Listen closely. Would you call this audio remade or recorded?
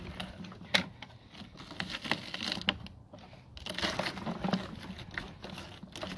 recorded